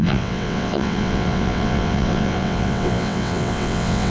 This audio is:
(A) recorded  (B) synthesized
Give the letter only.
B